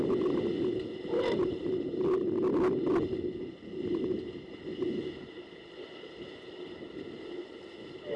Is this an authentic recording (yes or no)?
yes